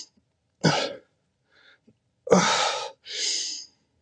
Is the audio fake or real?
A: real